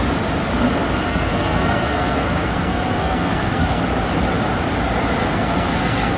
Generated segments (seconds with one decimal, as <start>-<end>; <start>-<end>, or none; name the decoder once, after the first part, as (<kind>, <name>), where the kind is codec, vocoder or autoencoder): 1.1-3.8 (codec, SNAC); 5.2-6.2